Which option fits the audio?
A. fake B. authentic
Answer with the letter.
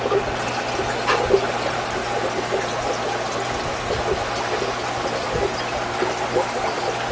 B